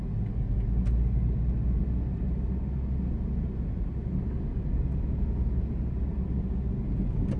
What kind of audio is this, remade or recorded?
recorded